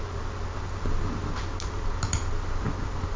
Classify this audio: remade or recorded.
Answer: recorded